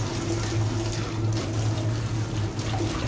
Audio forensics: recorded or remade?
recorded